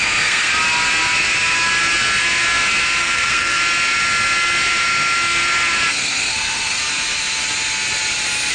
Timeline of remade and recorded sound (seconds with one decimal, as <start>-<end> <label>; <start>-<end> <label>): 0.0-0.5 remade; 0.5-3.0 recorded; 3.0-3.6 remade; 3.6-5.9 recorded; 5.9-6.8 remade; 6.8-8.5 recorded